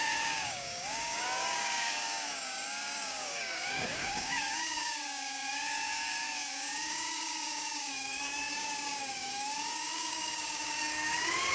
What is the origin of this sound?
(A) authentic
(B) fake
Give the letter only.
B